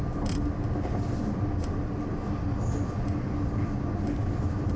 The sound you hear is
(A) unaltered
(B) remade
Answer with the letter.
A